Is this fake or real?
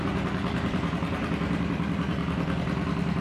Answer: fake